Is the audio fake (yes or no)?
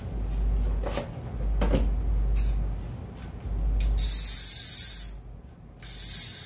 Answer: no